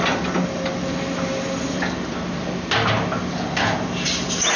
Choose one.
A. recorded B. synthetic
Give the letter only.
A